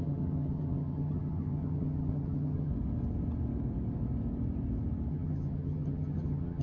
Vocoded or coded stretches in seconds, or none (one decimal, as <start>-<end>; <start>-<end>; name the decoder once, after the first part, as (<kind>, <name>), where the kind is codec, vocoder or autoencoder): 0.0-2.7 (vocoder, HiFi-GAN); 5.1-6.6